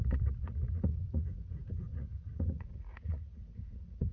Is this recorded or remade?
remade